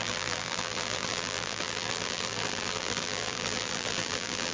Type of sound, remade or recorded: remade